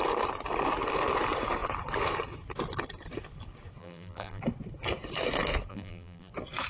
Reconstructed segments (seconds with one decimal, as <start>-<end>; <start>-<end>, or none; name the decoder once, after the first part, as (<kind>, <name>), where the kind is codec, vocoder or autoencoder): 3.8-4.4 (vocoder, BigVGAN v2); 5.7-6.3